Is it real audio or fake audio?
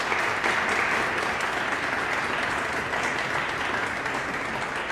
real